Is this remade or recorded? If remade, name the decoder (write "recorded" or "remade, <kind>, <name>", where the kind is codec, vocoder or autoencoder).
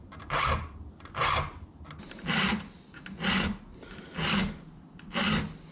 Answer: recorded